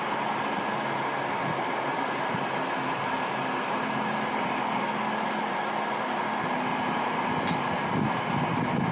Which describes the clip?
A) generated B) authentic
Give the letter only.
B